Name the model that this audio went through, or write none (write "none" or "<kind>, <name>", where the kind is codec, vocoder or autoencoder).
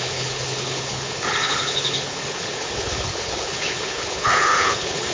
codec, HILCodec